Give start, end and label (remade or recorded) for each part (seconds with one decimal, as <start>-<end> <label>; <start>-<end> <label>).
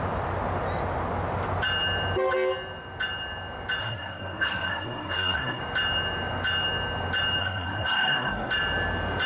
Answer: 0.0-3.8 recorded; 3.8-5.6 remade; 5.6-7.4 recorded; 7.4-8.5 remade; 8.5-9.3 recorded